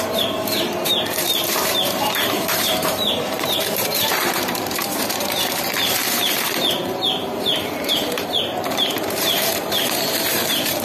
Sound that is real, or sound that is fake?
fake